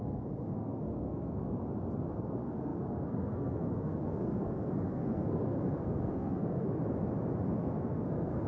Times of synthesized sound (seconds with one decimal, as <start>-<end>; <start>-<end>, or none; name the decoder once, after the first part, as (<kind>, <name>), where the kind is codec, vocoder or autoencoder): 0.0-1.6 (codec, SNAC); 2.2-6.8; 7.6-8.5